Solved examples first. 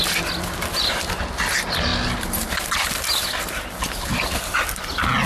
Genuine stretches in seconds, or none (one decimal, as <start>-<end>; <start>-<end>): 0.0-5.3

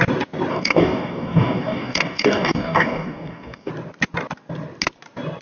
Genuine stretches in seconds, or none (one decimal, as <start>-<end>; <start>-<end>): 0.0-0.5; 3.7-5.4

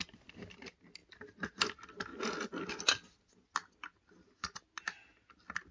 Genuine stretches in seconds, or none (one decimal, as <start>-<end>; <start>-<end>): 0.0-5.7

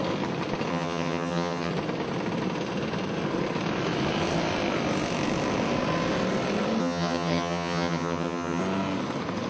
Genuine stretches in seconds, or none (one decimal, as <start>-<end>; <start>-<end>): 0.0-0.7; 1.7-6.8; 8.6-9.5

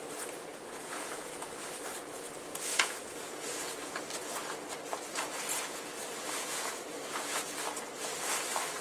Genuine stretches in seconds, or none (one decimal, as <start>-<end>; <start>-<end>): 0.0-0.5; 1.5-2.0; 4.0-5.1; 7.4-8.8